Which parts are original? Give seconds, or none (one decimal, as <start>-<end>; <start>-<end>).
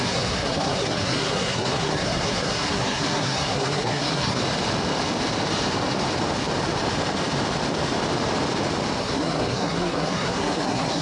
4.4-9.0